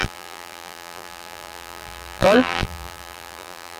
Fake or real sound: fake